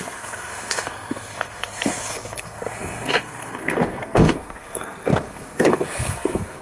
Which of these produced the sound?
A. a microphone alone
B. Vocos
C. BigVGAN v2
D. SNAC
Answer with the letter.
D